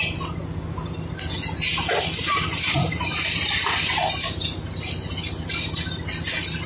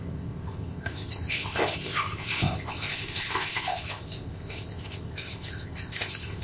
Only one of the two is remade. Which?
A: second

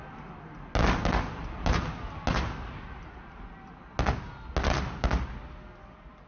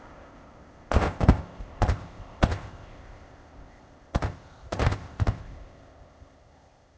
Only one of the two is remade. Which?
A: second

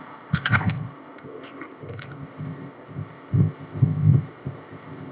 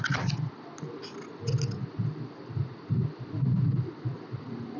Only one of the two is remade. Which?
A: first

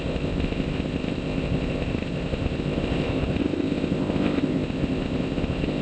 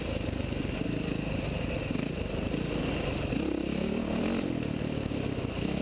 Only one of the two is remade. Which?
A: first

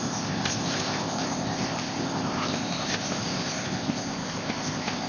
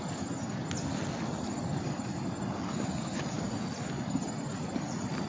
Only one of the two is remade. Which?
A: first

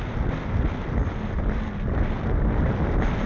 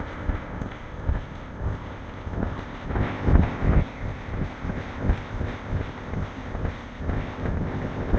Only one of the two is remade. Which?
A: second